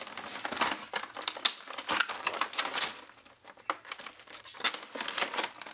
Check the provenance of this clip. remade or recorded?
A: recorded